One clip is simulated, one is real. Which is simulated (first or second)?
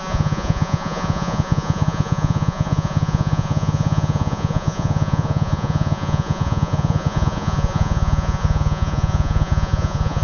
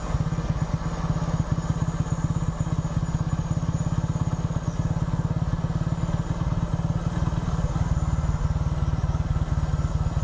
first